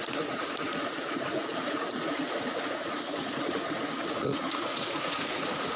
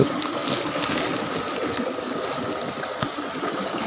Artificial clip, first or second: first